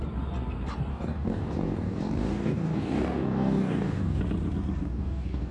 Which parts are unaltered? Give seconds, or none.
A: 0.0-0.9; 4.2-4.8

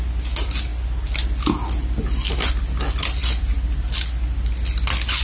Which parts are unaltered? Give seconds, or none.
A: 0.0-5.2

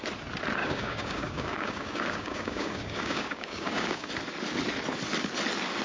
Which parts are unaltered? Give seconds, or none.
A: 0.0-0.6; 4.1-5.8

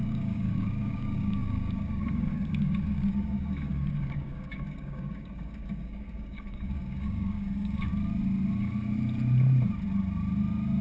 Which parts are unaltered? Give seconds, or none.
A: 7.9-10.8

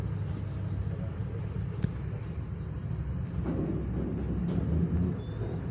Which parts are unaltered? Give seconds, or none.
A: 0.0-5.7

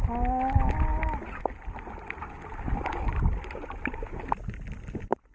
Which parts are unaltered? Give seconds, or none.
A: 0.0-5.3